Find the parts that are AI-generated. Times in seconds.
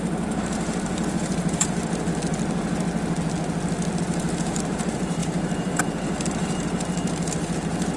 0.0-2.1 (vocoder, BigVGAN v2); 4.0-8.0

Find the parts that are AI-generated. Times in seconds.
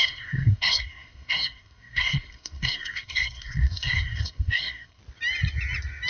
0.0-5.0 (codec, SNAC)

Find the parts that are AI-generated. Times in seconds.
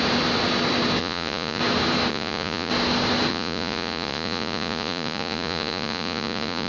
1.0-1.6 (vocoder, Vocos); 2.1-2.7; 3.3-6.7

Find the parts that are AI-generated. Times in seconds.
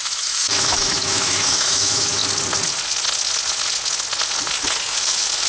0.0-2.2 (autoencoder, DAC-VAE)